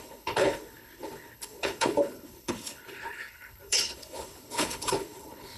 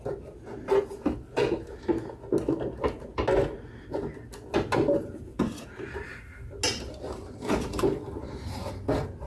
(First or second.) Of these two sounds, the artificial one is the first